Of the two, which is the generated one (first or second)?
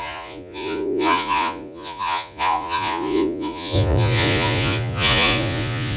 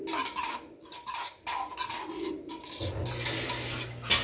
first